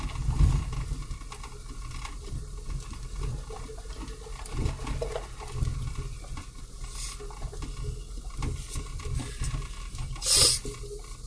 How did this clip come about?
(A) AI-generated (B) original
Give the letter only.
B